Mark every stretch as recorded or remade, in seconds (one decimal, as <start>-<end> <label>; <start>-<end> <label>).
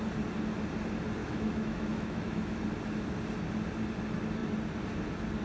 0.0-1.2 recorded; 1.2-2.6 remade; 2.6-5.4 recorded